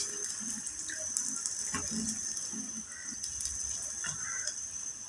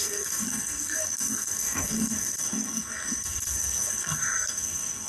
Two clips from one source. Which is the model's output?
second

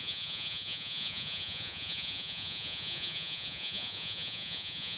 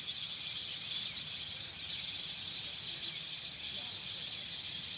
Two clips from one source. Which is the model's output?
first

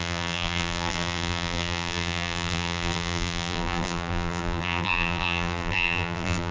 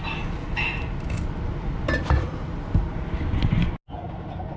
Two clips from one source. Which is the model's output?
first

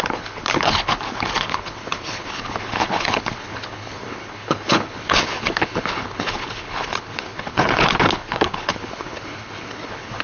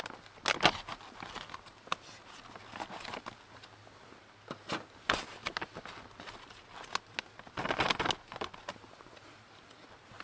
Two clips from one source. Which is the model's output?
first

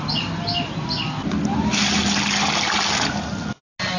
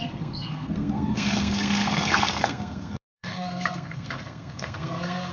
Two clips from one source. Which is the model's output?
second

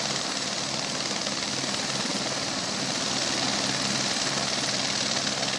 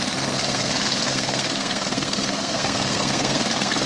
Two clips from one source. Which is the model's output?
second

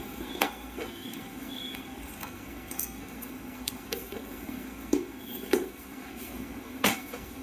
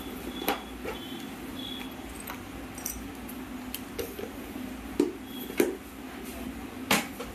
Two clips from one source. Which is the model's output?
first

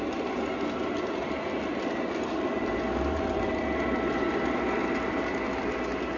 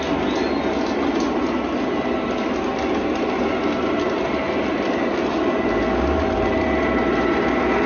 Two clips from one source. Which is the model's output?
first